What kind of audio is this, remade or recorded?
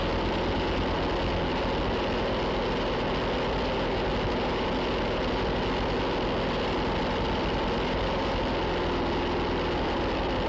recorded